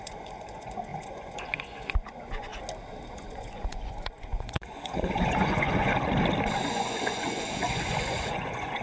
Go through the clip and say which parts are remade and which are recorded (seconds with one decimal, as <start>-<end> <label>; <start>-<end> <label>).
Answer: 0.0-2.5 remade; 2.5-3.1 recorded; 3.1-5.9 remade; 5.9-6.7 recorded; 6.7-8.8 remade